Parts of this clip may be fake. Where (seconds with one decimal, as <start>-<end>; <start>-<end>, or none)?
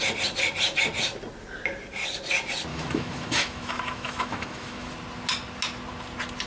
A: 2.7-4.9